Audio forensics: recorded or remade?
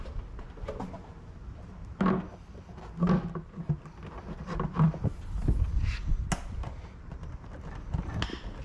recorded